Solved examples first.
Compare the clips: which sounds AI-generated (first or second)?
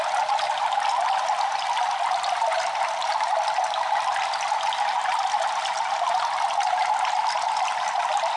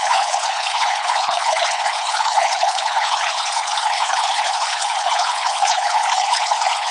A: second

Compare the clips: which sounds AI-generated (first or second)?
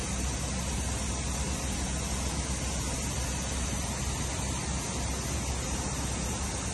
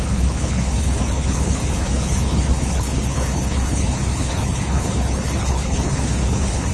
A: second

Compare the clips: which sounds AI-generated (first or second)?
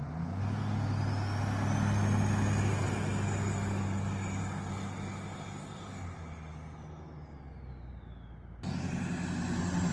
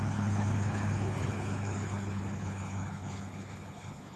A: second